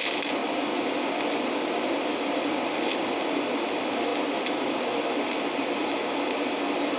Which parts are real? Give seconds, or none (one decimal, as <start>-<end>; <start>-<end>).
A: 0.0-7.0